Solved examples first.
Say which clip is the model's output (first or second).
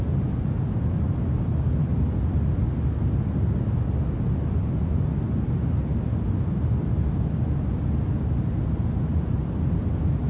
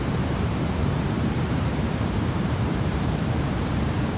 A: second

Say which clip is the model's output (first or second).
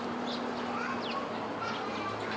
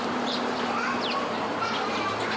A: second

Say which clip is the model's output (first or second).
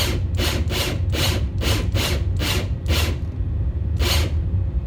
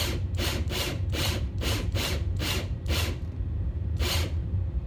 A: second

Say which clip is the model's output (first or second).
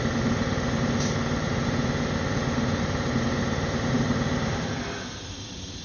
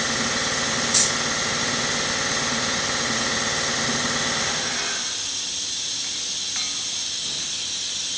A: first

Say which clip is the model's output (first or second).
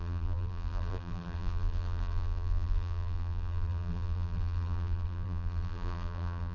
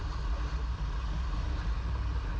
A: first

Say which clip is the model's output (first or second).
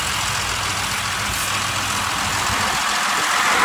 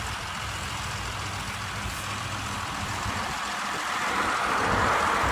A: second